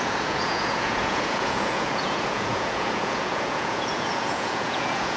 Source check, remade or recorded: remade